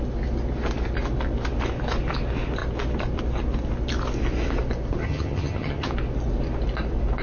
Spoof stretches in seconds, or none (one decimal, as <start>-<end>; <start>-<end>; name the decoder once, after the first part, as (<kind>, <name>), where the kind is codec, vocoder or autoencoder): 5.0-5.9 (vocoder, HiFi-GAN)